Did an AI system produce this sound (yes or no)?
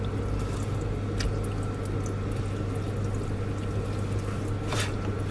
no